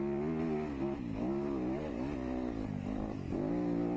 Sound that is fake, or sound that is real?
real